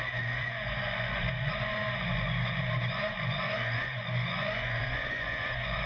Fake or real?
fake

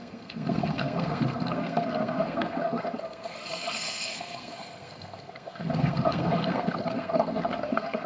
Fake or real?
fake